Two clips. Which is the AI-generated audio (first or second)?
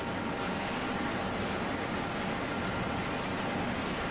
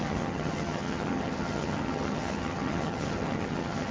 second